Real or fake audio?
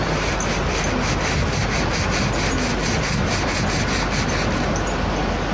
real